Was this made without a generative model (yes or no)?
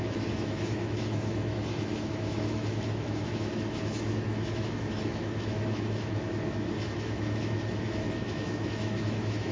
no